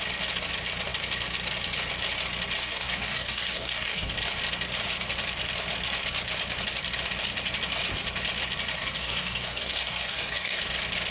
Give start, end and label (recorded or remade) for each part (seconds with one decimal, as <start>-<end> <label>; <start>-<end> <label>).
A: 0.0-2.6 recorded; 2.6-4.1 remade; 4.1-8.8 recorded; 8.8-10.6 remade; 10.6-11.1 recorded